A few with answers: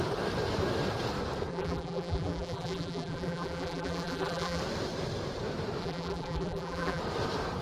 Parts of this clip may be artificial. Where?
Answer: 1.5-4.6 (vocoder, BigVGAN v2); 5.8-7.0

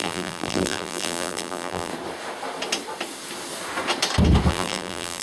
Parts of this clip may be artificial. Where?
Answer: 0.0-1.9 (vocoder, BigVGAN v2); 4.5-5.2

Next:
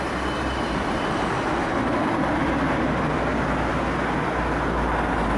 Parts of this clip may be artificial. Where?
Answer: none

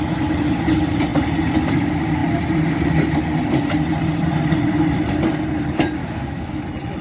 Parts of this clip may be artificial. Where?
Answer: 6.0-6.6 (autoencoder, DAC-VAE)

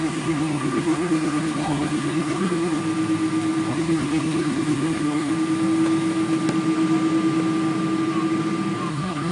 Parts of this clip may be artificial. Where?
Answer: 0.0-2.8 (codec, SNAC); 3.7-5.3; 8.9-9.3

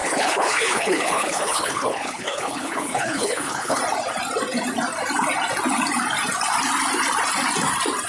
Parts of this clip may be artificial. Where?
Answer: 0.0-3.8 (codec, HILCodec)

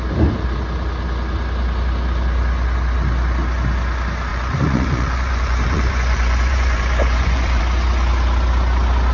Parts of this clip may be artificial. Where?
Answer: 4.3-7.6 (vocoder, Vocos)

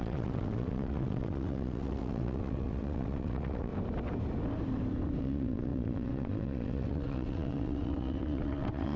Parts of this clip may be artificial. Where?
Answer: 0.0-3.7 (vocoder, WaveNeXt); 5.2-9.0